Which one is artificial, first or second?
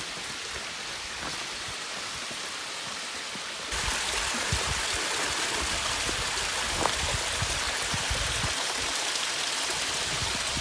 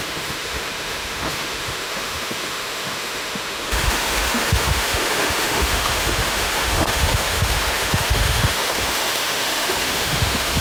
second